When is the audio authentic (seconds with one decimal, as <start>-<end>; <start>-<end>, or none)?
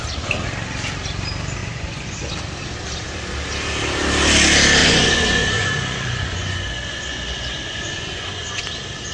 0.0-1.6; 2.3-4.8; 8.6-9.1